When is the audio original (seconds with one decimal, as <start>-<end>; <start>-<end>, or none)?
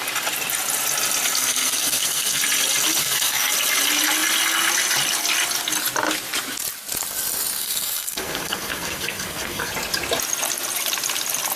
0.0-1.4; 2.4-3.0; 3.5-7.6; 9.7-11.6